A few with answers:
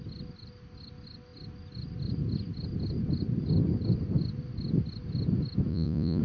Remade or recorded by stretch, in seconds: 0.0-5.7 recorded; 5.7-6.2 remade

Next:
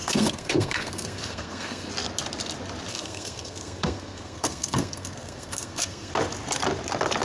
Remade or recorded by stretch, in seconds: 0.0-1.9 remade; 1.9-2.9 recorded; 2.9-6.1 remade; 6.1-7.2 recorded

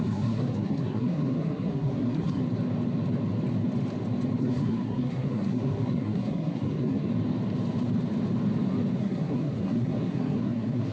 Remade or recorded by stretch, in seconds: 0.0-2.4 remade; 2.4-4.4 recorded; 4.4-7.1 remade; 7.1-9.0 recorded; 9.0-10.9 remade

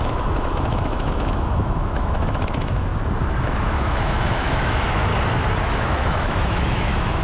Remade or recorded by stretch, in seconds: 0.0-2.9 remade; 2.9-3.4 recorded; 3.4-5.1 remade; 5.1-5.6 recorded; 5.6-7.2 remade

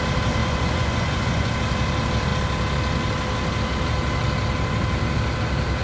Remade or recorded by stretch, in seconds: 0.0-0.4 recorded; 0.4-1.5 remade; 1.5-5.8 recorded

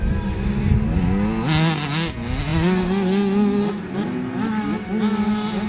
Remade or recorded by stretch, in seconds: 0.0-5.7 recorded